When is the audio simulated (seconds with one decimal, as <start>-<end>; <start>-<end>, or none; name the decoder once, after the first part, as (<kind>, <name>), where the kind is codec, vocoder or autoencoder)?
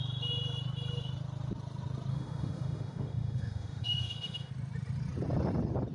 2.1-4.5 (autoencoder, DAC-VAE)